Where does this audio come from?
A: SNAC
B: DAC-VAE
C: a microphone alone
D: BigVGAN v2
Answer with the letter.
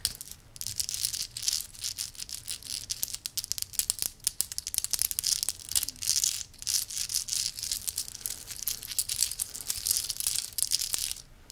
C